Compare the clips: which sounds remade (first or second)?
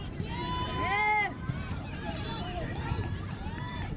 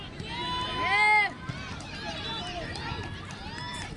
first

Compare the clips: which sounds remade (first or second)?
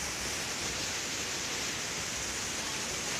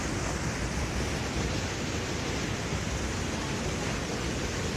first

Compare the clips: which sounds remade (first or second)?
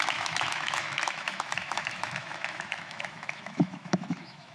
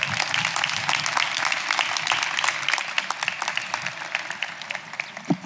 first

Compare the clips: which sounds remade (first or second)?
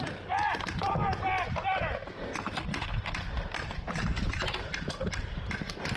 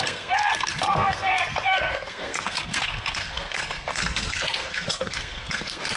second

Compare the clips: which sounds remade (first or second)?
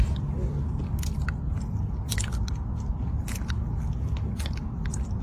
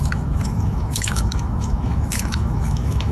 second